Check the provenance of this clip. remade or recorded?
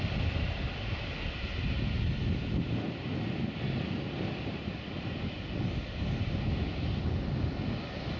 recorded